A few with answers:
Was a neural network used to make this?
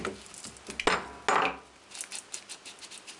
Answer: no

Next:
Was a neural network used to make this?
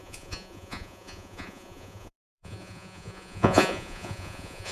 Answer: yes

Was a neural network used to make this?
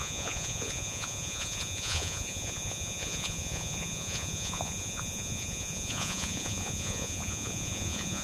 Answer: yes